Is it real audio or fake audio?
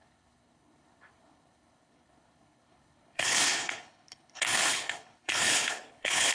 fake